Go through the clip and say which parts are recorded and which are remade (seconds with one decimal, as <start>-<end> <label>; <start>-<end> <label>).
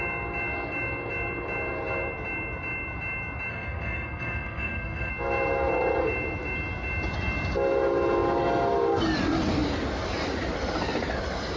0.0-3.5 recorded; 3.5-5.1 remade; 5.1-11.6 recorded